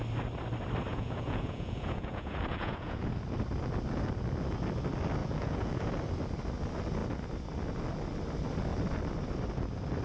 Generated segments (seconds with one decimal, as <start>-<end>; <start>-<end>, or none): 0.9-3.1; 5.2-5.9